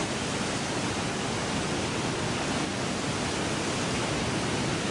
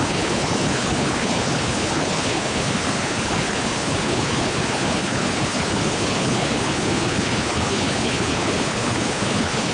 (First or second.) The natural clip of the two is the first